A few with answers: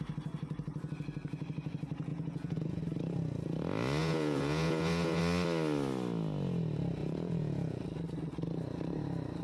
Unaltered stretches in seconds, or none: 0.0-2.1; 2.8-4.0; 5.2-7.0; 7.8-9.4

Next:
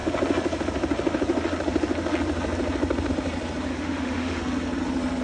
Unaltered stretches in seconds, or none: 0.0-3.7; 4.4-5.2

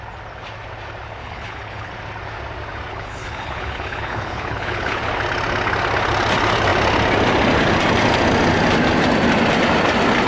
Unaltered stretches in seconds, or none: 0.0-1.2; 1.9-2.9; 5.0-10.3

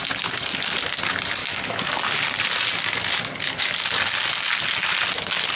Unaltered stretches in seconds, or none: 0.0-1.4; 1.9-5.6

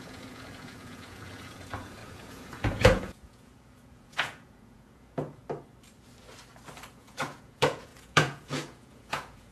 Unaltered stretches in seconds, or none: 5.4-6.9

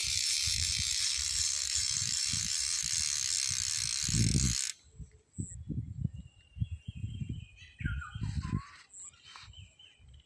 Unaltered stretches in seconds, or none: 2.8-6.6; 8.2-10.3

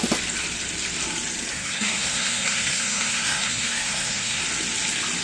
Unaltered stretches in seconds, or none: 0.0-1.5; 4.4-5.2